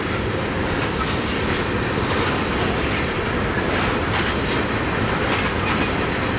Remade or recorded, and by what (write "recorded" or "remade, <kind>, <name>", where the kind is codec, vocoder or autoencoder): recorded